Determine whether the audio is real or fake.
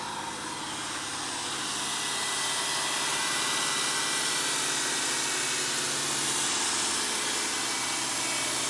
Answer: real